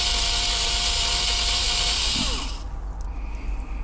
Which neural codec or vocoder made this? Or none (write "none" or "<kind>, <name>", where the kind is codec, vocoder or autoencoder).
none